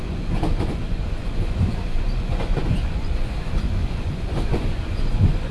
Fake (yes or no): yes